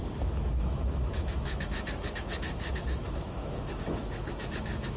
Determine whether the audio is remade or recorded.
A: remade